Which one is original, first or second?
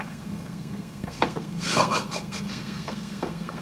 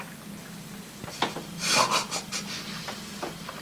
second